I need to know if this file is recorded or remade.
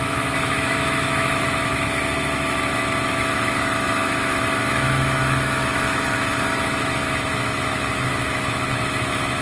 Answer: remade